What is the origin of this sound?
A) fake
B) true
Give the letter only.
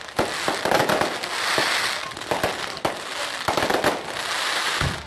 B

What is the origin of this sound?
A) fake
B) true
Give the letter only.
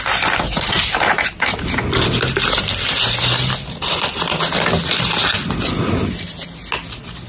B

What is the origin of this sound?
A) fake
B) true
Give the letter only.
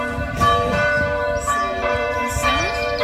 A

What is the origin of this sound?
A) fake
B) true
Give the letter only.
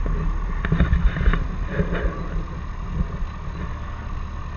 B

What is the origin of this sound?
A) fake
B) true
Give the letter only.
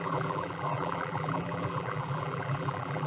A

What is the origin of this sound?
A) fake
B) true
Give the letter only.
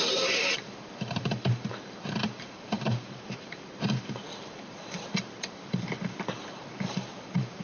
A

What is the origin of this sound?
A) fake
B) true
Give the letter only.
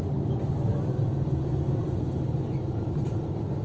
A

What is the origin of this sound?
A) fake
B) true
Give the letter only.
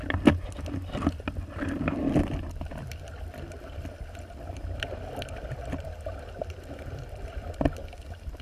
B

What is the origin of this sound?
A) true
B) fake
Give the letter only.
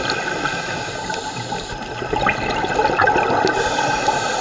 A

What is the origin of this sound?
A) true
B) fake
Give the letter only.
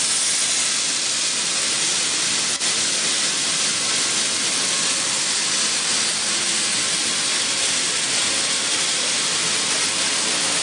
A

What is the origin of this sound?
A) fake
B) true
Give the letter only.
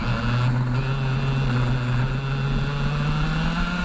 B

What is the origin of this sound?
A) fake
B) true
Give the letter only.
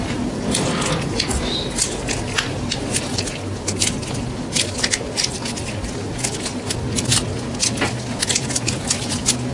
B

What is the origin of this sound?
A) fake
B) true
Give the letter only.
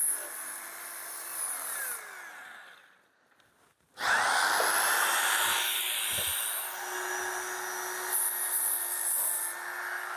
B